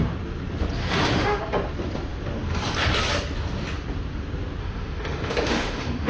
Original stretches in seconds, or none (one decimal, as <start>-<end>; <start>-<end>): 0.0-0.8; 1.4-4.6